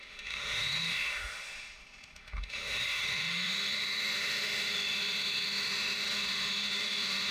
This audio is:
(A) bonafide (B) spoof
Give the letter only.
B